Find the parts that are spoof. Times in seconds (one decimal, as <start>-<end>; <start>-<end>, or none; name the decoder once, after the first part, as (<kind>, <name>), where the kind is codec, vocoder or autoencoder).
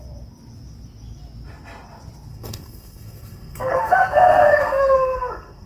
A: 2.3-5.7 (codec, SNAC)